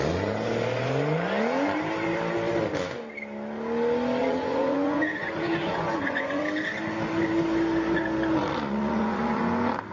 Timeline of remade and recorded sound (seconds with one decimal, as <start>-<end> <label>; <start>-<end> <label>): 0.0-4.2 recorded; 4.2-6.4 remade; 6.4-8.4 recorded; 8.4-9.4 remade; 9.4-9.9 recorded